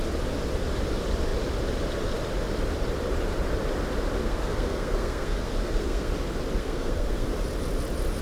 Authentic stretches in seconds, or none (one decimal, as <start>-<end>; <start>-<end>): 0.0-4.2; 6.1-6.6; 7.4-8.2